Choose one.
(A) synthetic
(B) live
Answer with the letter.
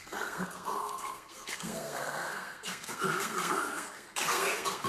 A